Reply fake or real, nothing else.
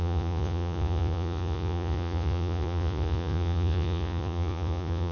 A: fake